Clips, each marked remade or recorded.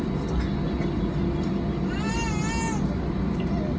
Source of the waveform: recorded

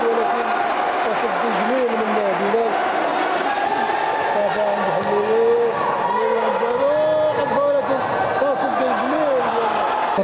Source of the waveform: recorded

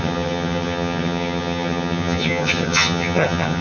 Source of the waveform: remade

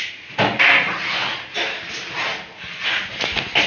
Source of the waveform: recorded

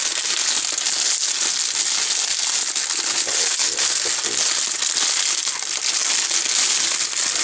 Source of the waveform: recorded